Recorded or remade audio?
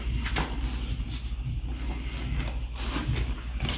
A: recorded